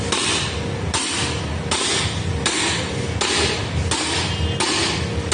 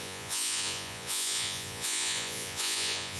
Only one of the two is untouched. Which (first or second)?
first